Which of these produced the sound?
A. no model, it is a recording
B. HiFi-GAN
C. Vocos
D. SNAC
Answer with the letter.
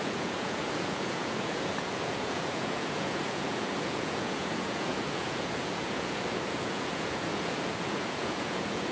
C